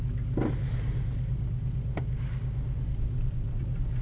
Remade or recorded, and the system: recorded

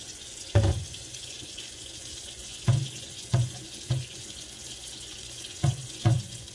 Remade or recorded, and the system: remade, vocoder, Vocos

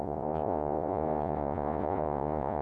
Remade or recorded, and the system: remade, vocoder, Vocos